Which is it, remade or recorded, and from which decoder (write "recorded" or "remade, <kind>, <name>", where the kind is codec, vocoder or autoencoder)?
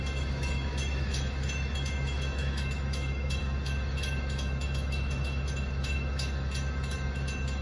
remade, autoencoder, DAC-VAE